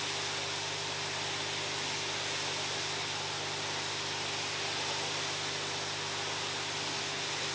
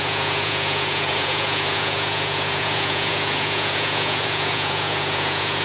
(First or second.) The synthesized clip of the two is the second